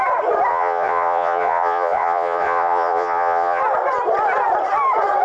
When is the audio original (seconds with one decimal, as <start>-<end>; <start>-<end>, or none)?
0.0-0.5; 3.6-5.2